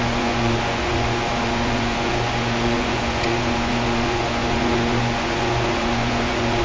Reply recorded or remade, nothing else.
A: remade